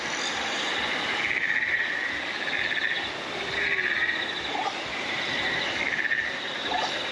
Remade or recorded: recorded